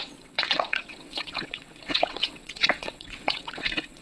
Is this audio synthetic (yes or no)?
yes